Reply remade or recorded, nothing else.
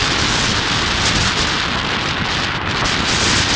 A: recorded